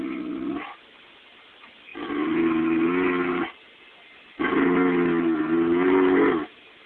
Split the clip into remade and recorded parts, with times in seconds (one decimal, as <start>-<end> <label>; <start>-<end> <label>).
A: 0.0-6.9 recorded